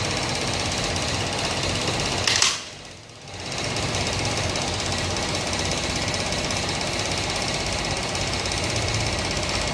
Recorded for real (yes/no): yes